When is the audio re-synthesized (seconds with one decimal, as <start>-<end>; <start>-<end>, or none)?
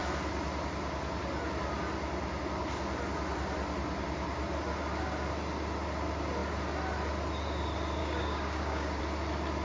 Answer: 8.0-9.0